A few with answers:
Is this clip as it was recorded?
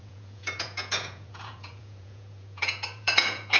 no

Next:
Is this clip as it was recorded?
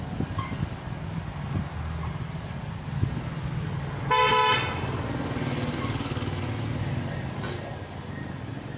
yes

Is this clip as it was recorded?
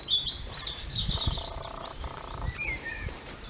no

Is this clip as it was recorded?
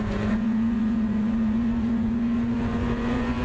no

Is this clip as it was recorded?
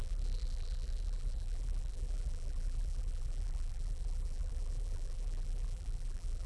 no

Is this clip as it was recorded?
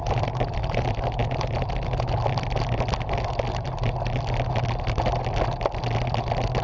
yes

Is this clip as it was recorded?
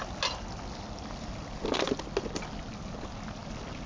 yes